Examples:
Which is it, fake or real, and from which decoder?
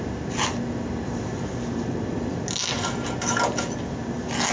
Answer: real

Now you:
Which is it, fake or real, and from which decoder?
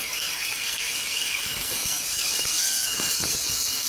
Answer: fake, codec, SNAC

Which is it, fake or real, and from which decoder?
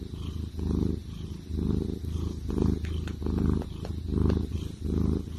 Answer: real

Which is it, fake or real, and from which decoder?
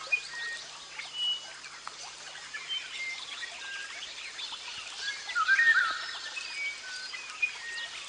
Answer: real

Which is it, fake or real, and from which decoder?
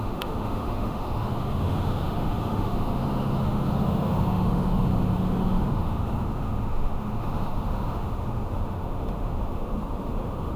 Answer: fake, autoencoder, DAC-VAE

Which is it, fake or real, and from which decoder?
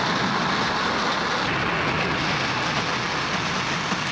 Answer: real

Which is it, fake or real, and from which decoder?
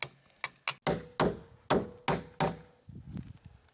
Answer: real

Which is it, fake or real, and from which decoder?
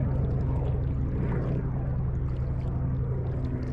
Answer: real